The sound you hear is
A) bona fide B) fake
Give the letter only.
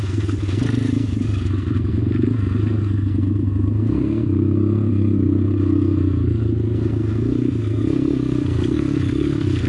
B